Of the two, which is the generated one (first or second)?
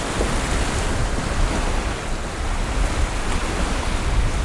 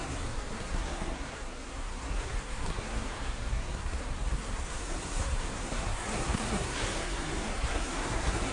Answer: second